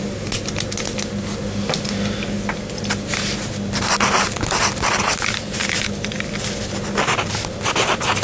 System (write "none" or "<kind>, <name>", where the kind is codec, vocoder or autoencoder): none